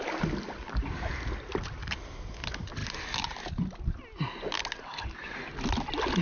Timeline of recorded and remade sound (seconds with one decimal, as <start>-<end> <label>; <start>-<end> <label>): 0.0-6.2 recorded